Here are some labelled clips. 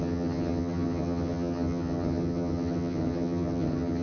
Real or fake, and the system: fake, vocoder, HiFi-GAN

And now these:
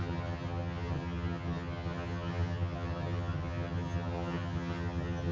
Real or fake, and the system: fake, vocoder, HiFi-GAN